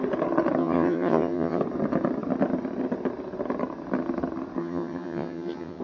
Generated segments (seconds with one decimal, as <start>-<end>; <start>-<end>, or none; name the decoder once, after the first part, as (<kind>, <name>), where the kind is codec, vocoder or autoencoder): 0.6-1.6 (vocoder, HiFi-GAN); 4.6-5.8